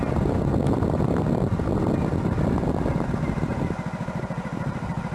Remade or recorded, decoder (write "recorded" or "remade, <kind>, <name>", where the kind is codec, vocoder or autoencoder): recorded